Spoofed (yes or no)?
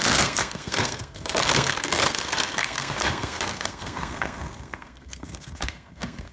yes